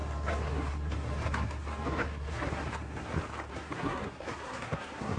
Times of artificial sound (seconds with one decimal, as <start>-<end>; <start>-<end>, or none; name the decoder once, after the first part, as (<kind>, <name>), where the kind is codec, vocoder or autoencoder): 0.0-3.1 (codec, SNAC); 3.5-5.2